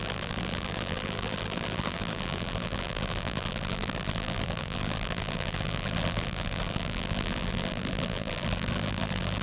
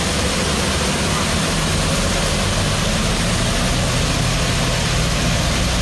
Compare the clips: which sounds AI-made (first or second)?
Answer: first